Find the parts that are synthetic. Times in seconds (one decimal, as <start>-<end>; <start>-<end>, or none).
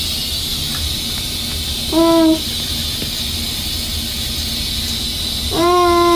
none